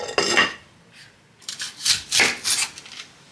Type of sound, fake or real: real